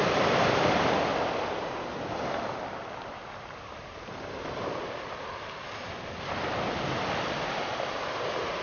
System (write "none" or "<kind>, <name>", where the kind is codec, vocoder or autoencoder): none